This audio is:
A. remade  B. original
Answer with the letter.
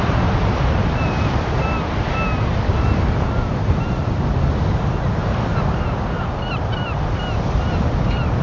B